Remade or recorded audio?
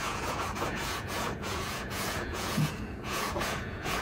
remade